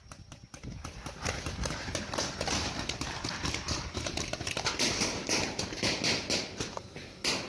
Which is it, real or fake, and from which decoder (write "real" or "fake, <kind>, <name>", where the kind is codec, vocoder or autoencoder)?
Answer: fake, vocoder, BigVGAN v2